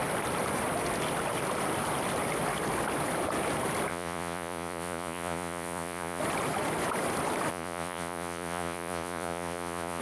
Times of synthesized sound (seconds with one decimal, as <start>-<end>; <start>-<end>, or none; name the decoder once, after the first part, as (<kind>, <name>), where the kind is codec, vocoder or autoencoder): 3.9-6.2 (vocoder, Vocos); 7.5-10.0